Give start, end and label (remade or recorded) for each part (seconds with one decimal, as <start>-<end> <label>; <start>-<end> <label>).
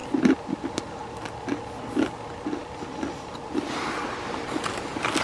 0.0-5.2 recorded